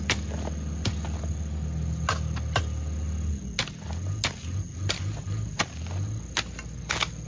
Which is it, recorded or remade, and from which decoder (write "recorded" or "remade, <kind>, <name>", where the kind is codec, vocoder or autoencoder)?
recorded